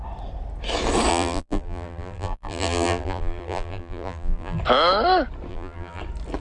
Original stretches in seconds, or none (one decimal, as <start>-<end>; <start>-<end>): 0.0-1.1; 4.6-5.5; 6.0-6.4